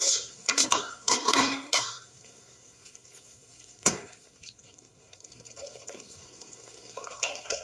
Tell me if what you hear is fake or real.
fake